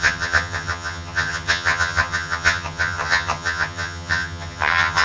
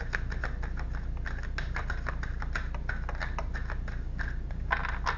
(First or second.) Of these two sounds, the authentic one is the second